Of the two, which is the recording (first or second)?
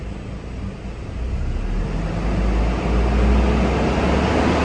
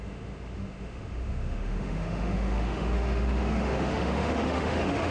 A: first